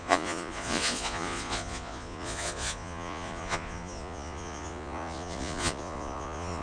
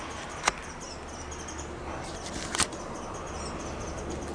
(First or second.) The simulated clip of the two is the first